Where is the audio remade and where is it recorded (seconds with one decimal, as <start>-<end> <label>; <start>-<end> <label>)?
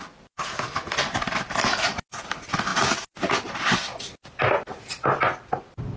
0.0-6.0 recorded